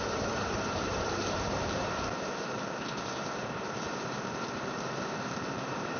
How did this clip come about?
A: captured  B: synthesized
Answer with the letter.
B